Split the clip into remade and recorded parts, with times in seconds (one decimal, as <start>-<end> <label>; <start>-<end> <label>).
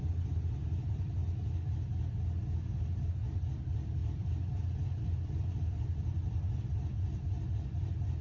0.0-1.2 remade; 1.2-3.4 recorded; 3.4-8.2 remade